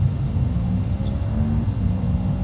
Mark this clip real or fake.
real